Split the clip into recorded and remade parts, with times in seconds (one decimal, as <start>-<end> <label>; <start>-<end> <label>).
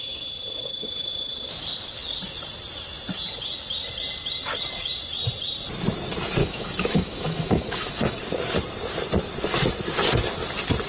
0.0-6.4 recorded; 6.4-8.2 remade; 8.2-10.9 recorded